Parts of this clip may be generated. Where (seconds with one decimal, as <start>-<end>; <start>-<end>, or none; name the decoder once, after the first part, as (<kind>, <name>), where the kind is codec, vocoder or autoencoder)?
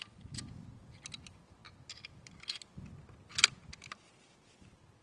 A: none